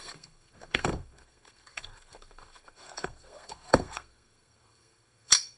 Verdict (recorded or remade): remade